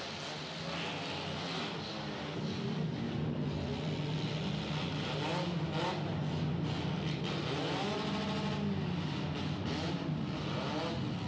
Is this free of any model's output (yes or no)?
yes